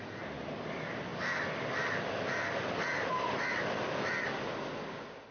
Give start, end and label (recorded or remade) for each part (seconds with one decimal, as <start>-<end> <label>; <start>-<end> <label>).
0.0-5.3 recorded